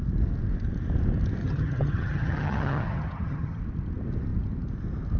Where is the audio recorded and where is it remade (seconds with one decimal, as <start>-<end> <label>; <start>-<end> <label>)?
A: 0.0-1.4 recorded; 1.4-3.6 remade; 3.6-5.2 recorded